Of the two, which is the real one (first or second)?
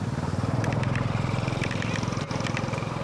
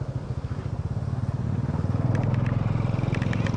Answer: second